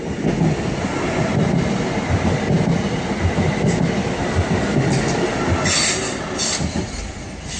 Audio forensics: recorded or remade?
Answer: recorded